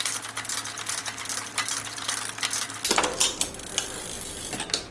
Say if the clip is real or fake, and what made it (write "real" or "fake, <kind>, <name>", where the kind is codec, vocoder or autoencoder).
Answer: real